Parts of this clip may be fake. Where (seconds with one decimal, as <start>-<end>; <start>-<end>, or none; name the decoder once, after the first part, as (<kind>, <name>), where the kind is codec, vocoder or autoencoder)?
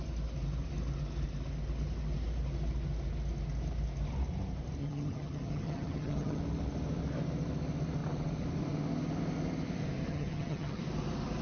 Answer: 4.8-6.4 (vocoder, HiFi-GAN); 10.1-10.8